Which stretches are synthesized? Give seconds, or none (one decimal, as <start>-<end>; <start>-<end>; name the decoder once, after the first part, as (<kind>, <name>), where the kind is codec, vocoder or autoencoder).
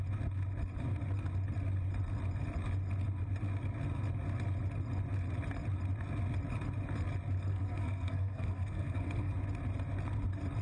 7.5-9.3 (codec, SNAC)